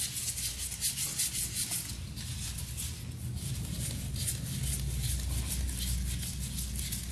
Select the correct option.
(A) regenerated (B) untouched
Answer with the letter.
B